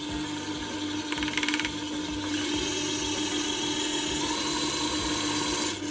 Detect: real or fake real